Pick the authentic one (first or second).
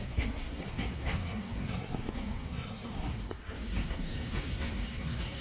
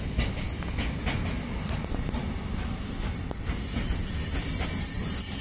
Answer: second